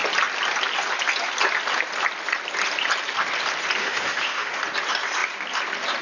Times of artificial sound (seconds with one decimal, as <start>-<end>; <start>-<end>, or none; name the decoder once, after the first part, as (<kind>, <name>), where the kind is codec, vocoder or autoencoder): 3.8-4.6 (autoencoder, DAC-VAE)